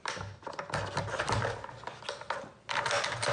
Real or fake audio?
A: real